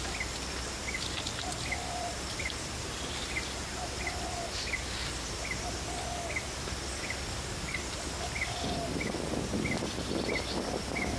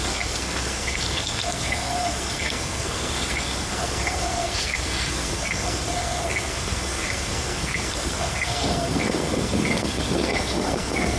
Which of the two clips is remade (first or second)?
second